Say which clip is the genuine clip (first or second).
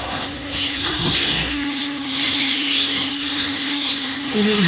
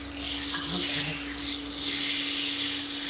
second